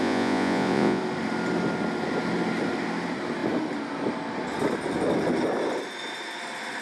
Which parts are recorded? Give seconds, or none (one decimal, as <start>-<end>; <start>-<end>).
1.0-6.8